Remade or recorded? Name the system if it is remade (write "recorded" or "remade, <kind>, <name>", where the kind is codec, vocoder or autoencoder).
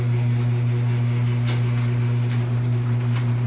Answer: recorded